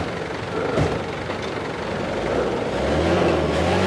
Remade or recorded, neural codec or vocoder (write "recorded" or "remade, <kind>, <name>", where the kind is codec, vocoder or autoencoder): recorded